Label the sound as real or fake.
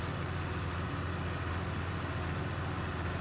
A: real